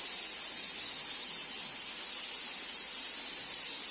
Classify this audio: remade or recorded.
recorded